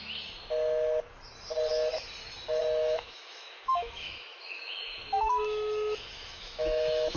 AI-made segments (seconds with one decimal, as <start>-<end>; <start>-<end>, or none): 2.8-7.2